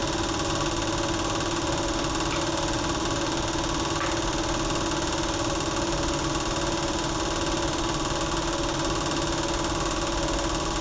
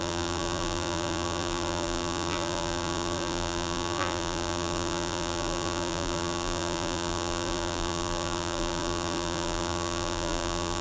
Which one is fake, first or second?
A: second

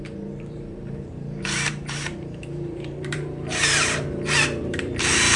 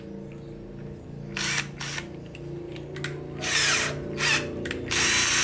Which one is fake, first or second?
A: first